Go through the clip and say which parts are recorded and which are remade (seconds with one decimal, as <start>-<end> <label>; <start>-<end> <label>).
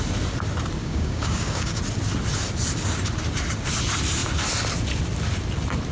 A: 0.0-0.8 recorded; 0.8-1.8 remade; 1.8-5.9 recorded